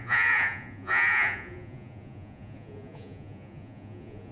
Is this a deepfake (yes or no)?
yes